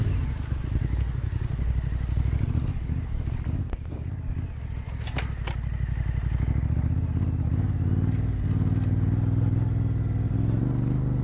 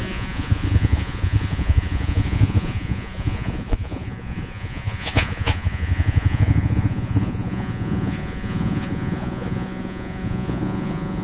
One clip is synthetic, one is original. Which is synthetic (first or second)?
second